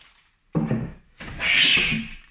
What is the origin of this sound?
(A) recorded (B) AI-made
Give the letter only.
A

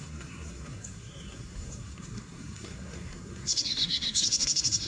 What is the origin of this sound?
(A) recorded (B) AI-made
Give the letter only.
B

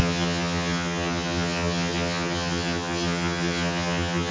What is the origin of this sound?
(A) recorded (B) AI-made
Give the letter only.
B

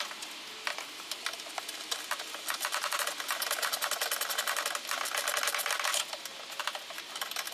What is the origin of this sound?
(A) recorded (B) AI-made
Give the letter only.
A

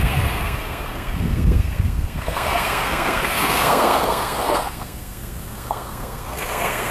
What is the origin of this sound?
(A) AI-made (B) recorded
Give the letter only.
A